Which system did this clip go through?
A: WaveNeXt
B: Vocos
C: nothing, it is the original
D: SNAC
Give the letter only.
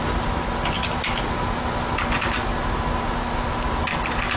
C